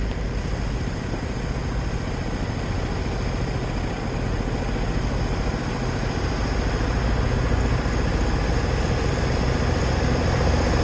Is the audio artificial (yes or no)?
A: no